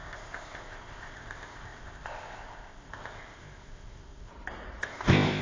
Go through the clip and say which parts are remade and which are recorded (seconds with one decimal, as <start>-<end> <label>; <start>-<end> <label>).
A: 0.0-4.3 remade; 4.3-4.8 recorded; 4.8-5.4 remade